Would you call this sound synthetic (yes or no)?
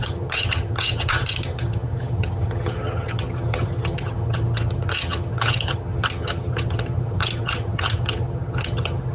yes